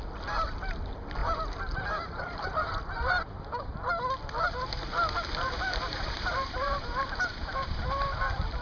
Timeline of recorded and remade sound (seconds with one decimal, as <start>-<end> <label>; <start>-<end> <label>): 0.0-1.2 recorded; 1.2-3.9 remade; 3.9-5.9 recorded; 5.9-8.2 remade; 8.2-8.6 recorded